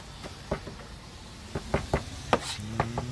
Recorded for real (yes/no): yes